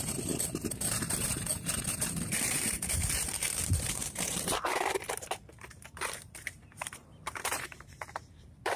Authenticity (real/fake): fake